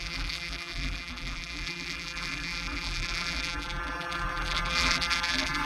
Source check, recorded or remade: remade